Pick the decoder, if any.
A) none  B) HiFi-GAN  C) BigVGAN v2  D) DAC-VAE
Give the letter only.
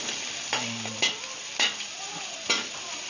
A